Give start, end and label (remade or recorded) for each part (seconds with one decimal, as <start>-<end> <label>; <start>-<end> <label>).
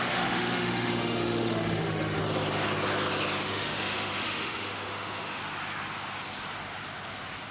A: 0.0-2.2 remade; 2.2-3.5 recorded; 3.5-5.4 remade; 5.4-7.5 recorded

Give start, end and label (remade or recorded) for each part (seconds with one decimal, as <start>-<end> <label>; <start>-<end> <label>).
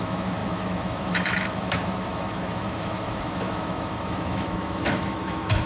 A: 0.0-5.7 remade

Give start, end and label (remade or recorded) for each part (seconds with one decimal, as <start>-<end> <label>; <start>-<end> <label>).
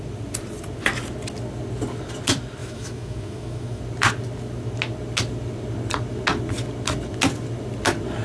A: 0.0-2.6 recorded; 2.6-3.8 remade; 3.8-8.2 recorded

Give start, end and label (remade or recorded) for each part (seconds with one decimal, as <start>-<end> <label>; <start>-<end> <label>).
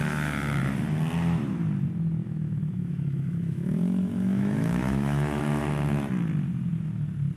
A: 0.0-0.6 remade; 0.6-2.2 recorded; 2.2-5.4 remade; 5.4-7.4 recorded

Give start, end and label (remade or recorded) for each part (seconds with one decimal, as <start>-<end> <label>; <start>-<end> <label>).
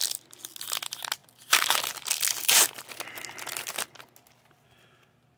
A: 0.0-5.4 recorded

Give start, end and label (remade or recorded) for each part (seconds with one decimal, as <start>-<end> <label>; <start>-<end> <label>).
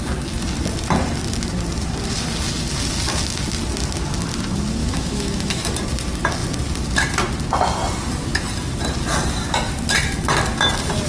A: 0.0-4.8 recorded; 4.8-5.7 remade; 5.7-11.1 recorded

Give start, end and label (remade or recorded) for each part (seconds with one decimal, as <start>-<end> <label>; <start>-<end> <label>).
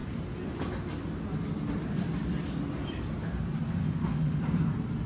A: 0.0-3.8 recorded; 3.8-4.4 remade; 4.4-5.1 recorded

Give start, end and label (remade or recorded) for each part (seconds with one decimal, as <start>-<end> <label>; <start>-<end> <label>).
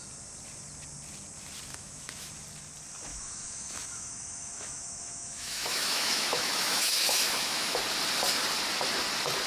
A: 0.0-1.7 recorded; 1.7-2.3 remade; 2.3-3.1 recorded; 3.1-7.8 remade; 7.8-9.5 recorded